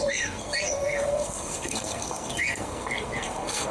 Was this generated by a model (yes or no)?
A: yes